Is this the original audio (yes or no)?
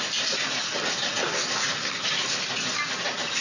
yes